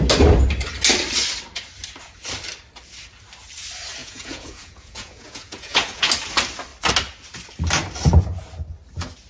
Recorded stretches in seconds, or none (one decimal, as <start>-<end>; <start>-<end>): 0.0-4.0; 6.1-9.3